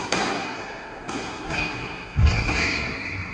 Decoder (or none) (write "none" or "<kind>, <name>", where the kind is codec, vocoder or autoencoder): codec, SNAC